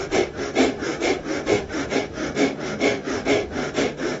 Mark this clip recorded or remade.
remade